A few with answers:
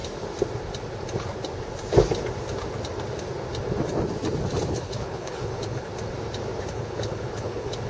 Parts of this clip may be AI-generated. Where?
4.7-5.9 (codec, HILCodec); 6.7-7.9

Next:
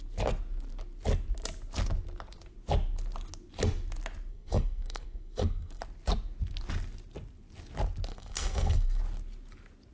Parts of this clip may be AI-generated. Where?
4.3-5.8 (codec, SNAC); 8.1-9.0

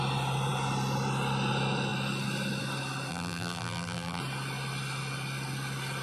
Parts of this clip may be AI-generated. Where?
3.1-4.2 (vocoder, BigVGAN v2)

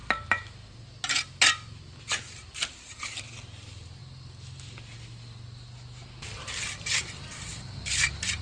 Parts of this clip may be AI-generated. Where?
none

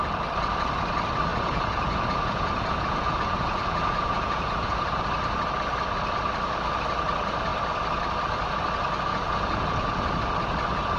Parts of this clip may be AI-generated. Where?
1.3-5.0 (vocoder, Vocos); 9.1-10.1

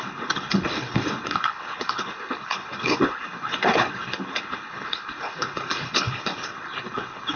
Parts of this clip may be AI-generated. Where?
0.0-7.4 (codec, HILCodec)

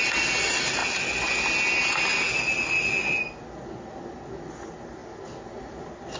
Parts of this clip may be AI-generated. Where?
none

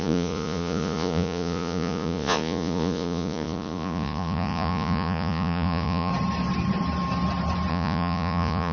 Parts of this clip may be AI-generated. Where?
0.0-6.1 (vocoder, Vocos); 7.7-8.7